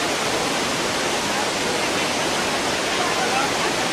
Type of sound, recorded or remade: recorded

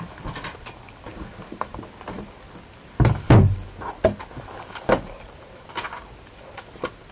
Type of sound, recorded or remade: recorded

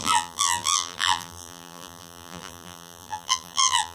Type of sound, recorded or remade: remade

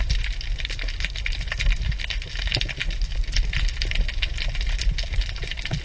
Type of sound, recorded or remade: recorded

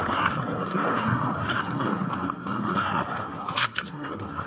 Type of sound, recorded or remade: remade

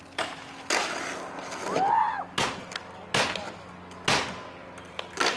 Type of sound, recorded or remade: recorded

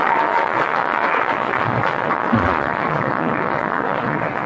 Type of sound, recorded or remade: remade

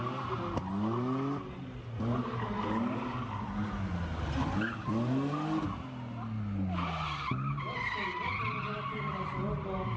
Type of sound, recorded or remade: recorded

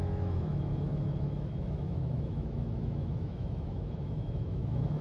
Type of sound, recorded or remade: remade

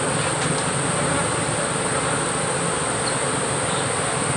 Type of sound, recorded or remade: remade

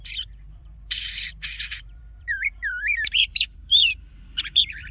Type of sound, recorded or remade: remade